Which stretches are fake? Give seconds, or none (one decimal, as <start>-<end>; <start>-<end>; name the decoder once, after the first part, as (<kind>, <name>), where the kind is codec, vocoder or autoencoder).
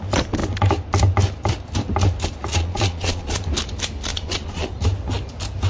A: 2.5-3.5 (vocoder, Vocos); 4.1-4.7